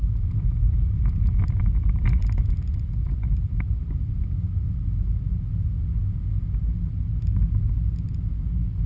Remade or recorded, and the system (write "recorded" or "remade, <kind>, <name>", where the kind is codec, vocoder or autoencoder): recorded